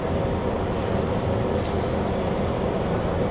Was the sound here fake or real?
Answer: real